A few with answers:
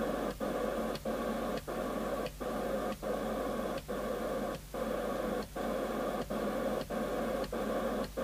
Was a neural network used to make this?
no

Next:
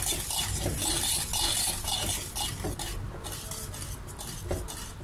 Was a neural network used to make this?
no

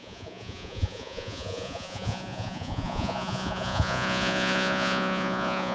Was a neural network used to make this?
yes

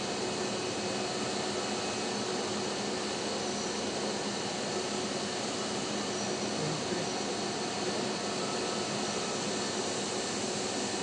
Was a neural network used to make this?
no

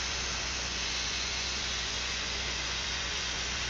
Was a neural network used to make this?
yes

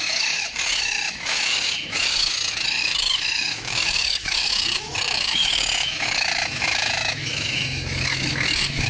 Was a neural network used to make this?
yes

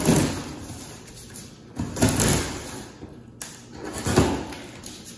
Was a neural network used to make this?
no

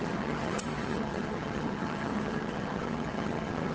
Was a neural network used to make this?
yes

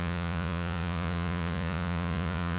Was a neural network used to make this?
yes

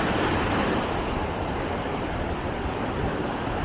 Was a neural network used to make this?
yes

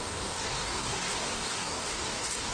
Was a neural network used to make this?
yes